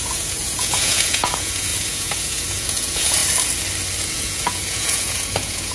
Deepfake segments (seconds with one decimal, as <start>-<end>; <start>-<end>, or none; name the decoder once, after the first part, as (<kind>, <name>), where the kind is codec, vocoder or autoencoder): 0.0-3.2 (vocoder, Vocos); 4.0-5.7